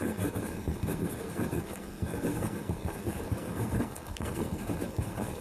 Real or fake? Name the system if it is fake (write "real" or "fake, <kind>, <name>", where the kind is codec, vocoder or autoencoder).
fake, codec, SNAC